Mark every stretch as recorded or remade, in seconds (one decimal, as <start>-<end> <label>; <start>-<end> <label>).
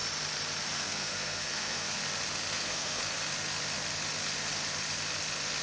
0.0-0.7 recorded; 0.7-2.0 remade; 2.0-2.5 recorded; 2.5-3.0 remade; 3.0-5.6 recorded